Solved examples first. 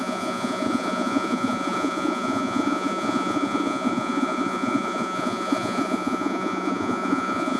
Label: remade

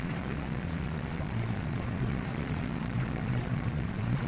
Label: remade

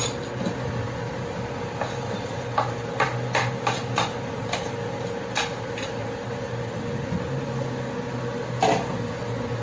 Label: recorded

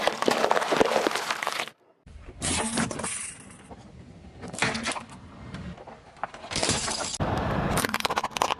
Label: recorded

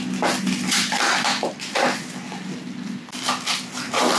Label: recorded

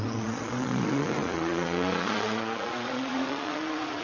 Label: remade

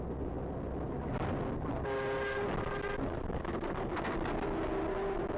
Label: recorded